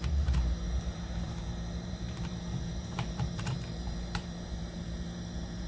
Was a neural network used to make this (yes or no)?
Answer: yes